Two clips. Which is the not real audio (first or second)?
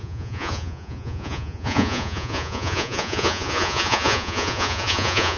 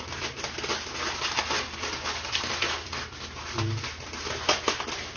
first